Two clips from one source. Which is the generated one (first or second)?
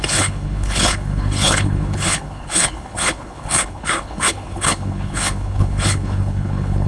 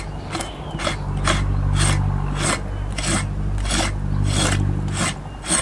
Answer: first